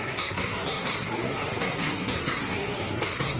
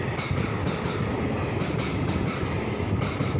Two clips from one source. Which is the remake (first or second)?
first